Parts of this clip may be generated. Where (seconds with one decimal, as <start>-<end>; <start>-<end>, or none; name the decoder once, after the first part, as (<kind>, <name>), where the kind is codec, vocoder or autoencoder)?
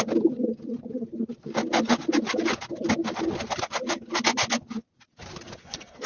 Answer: 5.6-6.1 (codec, SNAC)